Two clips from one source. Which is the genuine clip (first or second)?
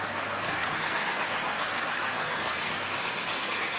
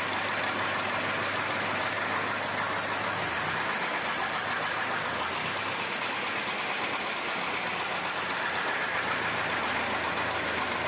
second